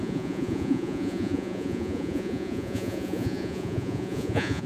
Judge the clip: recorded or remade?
remade